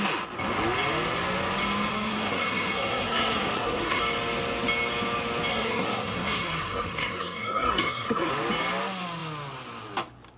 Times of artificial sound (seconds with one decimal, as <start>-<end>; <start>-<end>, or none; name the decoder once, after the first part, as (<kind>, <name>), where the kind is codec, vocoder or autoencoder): 1.9-4.0 (codec, SNAC); 5.5-8.3